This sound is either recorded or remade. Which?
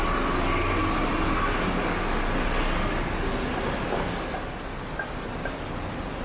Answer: recorded